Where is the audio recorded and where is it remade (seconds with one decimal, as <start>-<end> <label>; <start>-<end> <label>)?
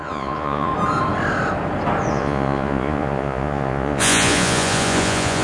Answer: 0.0-0.7 remade; 0.7-2.1 recorded; 2.1-5.4 remade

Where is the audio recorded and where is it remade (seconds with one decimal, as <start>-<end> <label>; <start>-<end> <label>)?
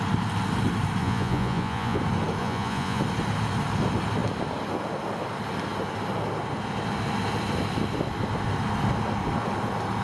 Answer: 0.0-1.0 recorded; 1.0-2.0 remade; 2.0-2.4 recorded; 2.4-3.0 remade; 3.0-10.0 recorded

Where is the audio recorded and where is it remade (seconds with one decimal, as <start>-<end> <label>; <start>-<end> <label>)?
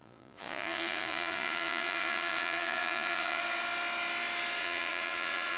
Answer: 0.0-3.4 remade; 3.4-4.6 recorded; 4.6-5.6 remade